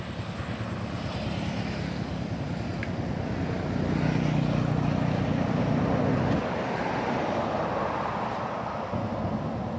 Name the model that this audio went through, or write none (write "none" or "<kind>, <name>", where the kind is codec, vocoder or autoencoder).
none